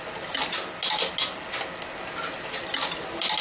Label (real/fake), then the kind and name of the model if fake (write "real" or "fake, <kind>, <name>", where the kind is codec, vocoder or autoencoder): real